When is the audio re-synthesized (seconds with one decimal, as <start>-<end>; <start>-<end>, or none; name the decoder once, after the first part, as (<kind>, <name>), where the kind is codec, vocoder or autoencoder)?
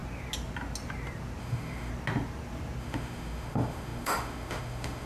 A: 1.4-1.9 (autoencoder, DAC-VAE); 2.8-5.1